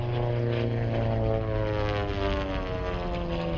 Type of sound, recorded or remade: recorded